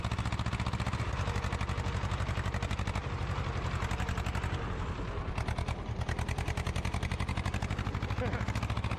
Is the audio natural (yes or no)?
yes